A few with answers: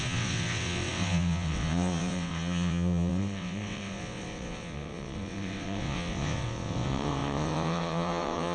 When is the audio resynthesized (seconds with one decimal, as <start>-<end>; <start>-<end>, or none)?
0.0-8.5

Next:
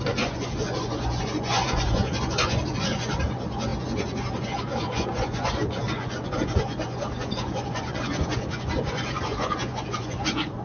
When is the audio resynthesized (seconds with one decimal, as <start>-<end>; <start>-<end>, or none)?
0.0-10.6

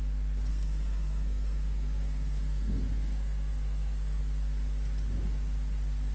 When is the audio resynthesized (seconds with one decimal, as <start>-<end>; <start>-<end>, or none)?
0.5-4.2

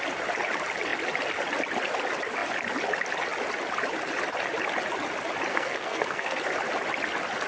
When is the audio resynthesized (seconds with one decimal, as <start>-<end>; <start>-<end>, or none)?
5.5-6.4

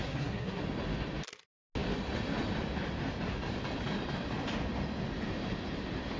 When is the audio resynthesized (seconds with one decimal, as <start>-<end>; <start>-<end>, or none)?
0.0-0.6

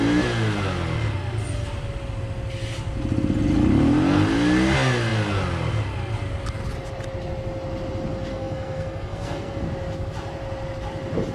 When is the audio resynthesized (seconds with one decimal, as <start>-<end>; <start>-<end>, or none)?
8.3-9.6

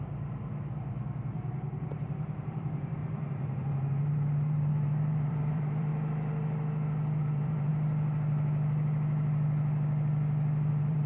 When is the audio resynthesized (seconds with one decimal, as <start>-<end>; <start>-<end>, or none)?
0.0-5.9; 7.2-7.7; 10.7-11.1